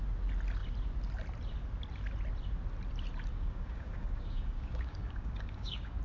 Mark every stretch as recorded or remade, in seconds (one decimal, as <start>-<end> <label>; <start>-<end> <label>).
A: 0.0-3.3 recorded; 3.3-6.0 remade